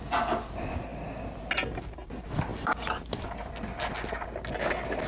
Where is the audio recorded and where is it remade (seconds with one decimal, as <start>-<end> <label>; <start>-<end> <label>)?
0.0-2.5 recorded; 2.5-3.4 remade; 3.4-5.1 recorded